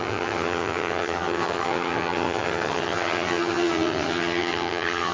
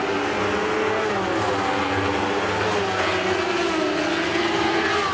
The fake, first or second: first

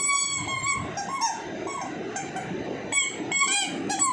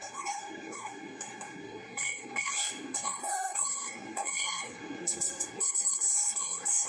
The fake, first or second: second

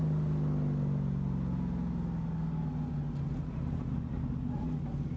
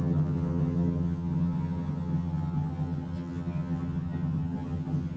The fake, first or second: second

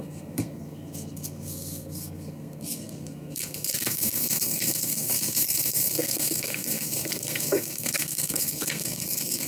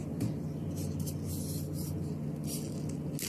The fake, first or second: first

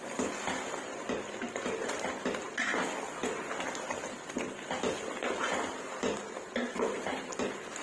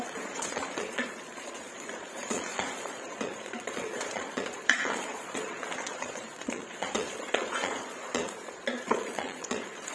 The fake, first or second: second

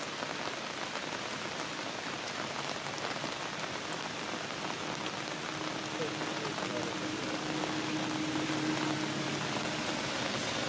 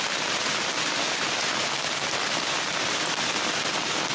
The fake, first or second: second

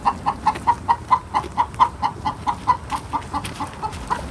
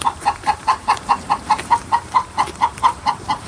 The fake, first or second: second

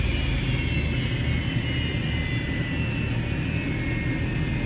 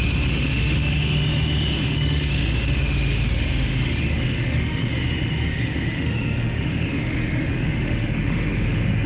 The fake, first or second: second